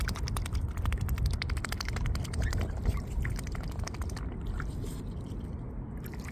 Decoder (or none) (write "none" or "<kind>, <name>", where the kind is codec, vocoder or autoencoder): none